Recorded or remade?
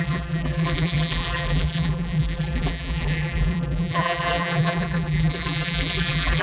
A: remade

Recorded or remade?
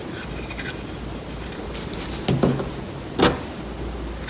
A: recorded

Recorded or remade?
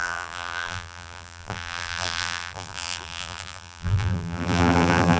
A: remade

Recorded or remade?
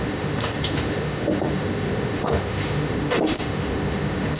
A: remade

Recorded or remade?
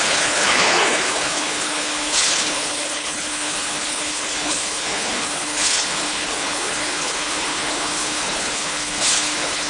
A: remade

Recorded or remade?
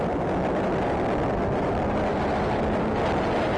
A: recorded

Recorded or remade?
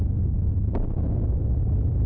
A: recorded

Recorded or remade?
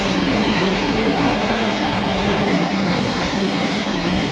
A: remade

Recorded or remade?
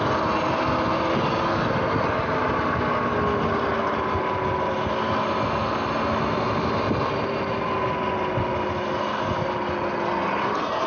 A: recorded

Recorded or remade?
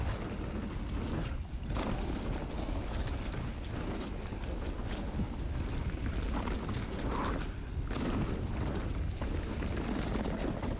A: recorded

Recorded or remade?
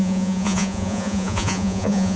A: remade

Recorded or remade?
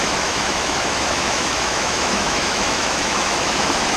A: remade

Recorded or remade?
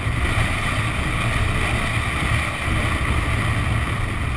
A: recorded